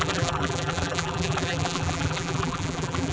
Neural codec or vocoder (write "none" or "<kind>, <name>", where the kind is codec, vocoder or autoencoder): vocoder, BigVGAN v2